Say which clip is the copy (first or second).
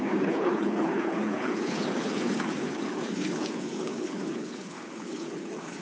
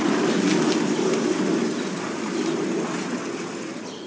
first